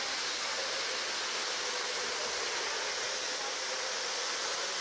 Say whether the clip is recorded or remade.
recorded